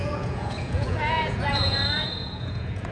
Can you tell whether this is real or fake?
fake